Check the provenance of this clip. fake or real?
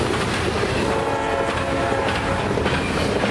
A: real